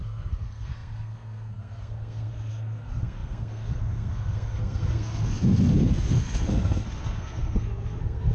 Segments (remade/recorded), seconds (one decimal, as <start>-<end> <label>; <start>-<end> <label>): 0.0-8.3 remade